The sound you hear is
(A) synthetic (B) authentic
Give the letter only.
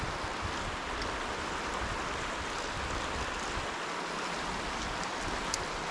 B